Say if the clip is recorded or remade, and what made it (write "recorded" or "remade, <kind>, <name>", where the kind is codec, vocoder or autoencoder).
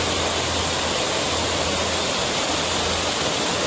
recorded